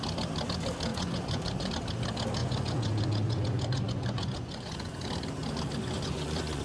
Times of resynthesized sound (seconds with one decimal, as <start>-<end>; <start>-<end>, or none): 0.9-1.7; 2.4-5.1; 5.8-6.6